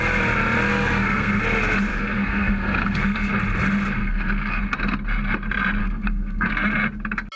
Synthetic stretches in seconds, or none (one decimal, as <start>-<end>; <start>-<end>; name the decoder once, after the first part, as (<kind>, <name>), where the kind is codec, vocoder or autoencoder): 0.7-1.4 (codec, SNAC); 1.9-3.3; 4.0-4.6; 5.8-6.5

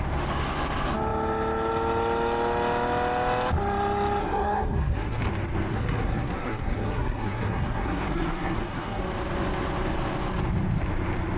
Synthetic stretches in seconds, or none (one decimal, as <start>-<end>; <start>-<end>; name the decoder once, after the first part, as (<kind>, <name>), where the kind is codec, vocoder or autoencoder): 4.2-5.2 (codec, SNAC); 5.7-9.0

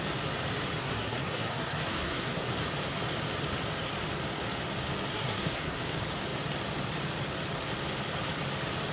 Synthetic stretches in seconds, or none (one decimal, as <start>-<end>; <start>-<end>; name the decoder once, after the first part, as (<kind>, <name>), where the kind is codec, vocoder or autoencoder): 0.8-2.5 (codec, SNAC); 5.1-5.8